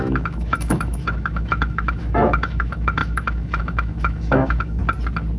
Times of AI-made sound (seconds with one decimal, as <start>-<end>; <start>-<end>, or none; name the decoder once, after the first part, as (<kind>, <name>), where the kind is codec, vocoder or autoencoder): 0.0-4.8 (autoencoder, DAC-VAE)